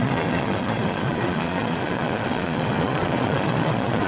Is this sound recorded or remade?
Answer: remade